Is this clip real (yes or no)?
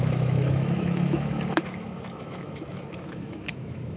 no